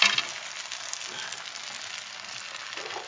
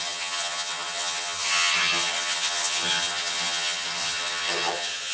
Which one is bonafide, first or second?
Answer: first